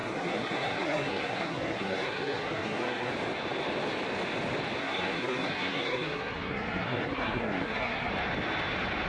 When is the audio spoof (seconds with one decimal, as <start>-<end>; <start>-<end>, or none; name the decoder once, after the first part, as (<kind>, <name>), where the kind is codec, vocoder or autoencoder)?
0.0-3.1 (codec, SNAC); 4.8-8.1